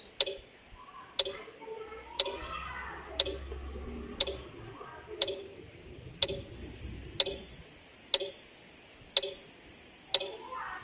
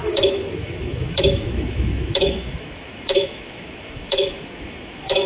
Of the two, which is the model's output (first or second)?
second